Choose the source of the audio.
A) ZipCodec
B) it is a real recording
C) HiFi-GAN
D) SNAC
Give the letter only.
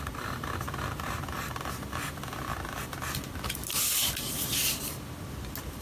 B